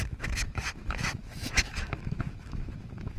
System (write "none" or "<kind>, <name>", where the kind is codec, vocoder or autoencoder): autoencoder, DAC-VAE